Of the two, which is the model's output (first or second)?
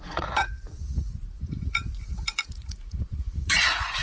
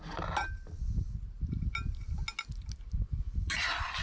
first